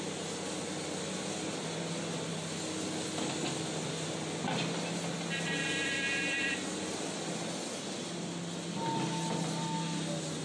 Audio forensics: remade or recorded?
recorded